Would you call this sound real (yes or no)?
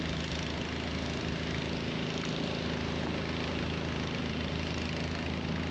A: yes